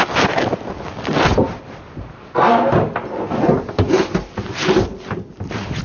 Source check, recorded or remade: recorded